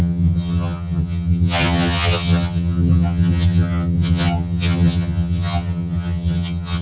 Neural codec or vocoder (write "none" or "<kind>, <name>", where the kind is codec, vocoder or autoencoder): vocoder, HiFi-GAN